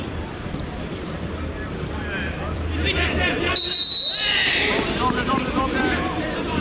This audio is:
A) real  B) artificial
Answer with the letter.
B